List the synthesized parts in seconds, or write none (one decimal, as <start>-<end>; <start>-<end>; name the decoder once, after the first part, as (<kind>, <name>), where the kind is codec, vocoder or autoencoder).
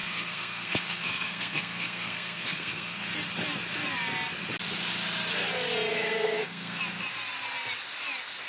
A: 0.0-3.1 (codec, SNAC); 5.9-6.8